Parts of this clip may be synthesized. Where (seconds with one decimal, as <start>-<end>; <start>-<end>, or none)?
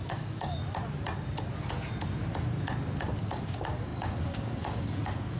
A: 0.0-0.6; 3.2-5.4